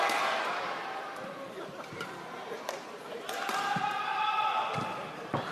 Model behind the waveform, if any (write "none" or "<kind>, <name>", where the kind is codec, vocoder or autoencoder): vocoder, BigVGAN v2